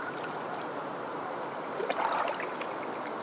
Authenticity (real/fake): real